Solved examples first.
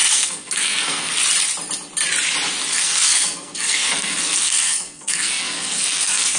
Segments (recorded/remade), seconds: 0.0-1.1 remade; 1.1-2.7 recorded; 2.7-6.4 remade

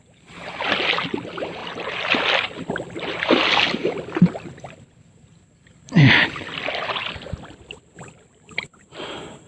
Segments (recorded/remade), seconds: 0.0-3.8 remade; 3.8-4.5 recorded; 4.5-9.5 remade

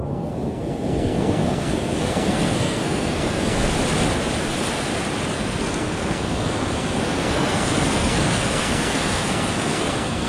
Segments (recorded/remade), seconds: 0.0-3.7 remade; 3.7-5.3 recorded; 5.3-10.3 remade

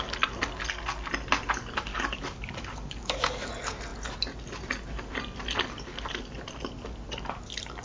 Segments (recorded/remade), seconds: 0.0-1.9 recorded; 1.9-3.5 remade; 3.5-7.8 recorded

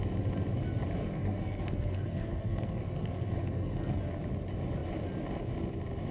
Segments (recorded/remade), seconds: 0.0-1.0 recorded; 1.0-4.0 remade; 4.0-6.1 recorded

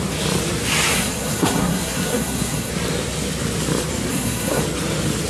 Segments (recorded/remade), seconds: 0.0-0.9 recorded; 0.9-2.7 remade; 2.7-4.1 recorded; 4.1-4.6 remade; 4.6-5.3 recorded